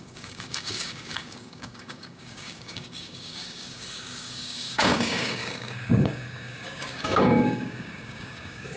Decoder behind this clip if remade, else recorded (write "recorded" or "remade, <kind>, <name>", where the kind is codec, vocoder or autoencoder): remade, codec, DAC